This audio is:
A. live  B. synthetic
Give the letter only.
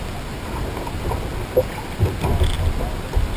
A